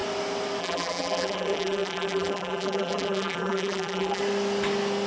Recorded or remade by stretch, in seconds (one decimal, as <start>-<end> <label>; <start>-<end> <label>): 0.0-0.6 recorded; 0.6-4.2 remade; 4.2-5.1 recorded